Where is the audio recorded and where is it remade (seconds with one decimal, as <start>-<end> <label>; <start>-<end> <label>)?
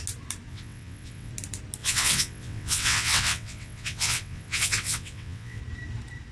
0.0-0.5 recorded; 0.5-1.3 remade; 1.3-1.8 recorded; 1.8-5.6 remade; 5.6-6.3 recorded